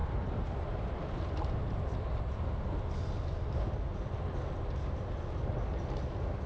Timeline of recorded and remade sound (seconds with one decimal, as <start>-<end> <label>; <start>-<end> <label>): 0.0-2.6 remade; 2.6-6.5 recorded